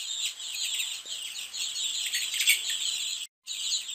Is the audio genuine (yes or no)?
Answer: yes